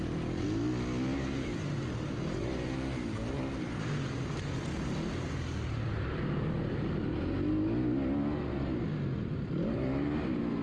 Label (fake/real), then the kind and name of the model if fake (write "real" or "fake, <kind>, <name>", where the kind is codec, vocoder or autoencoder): real